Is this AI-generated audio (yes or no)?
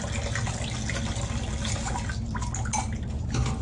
no